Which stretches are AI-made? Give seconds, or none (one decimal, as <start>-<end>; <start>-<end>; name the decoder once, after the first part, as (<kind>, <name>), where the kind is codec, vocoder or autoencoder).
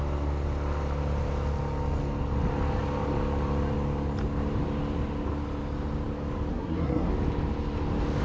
6.5-7.1 (codec, SNAC)